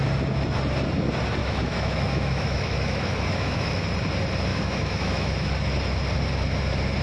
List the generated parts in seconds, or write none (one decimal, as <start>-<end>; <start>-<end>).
1.4-3.8; 4.5-5.5